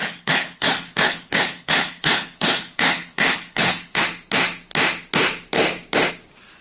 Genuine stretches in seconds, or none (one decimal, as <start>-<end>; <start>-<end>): 4.0-6.6